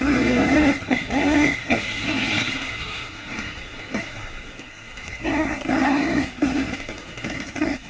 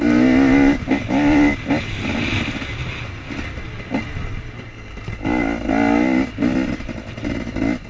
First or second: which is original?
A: second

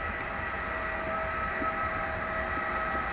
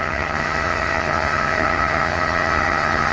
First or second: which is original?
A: first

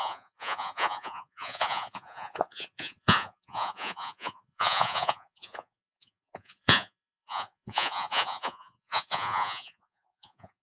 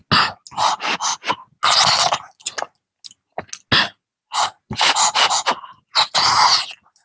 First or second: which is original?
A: second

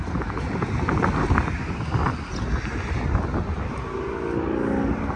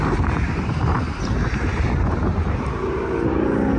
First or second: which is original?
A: first